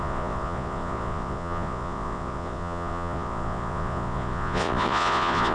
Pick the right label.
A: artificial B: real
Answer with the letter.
A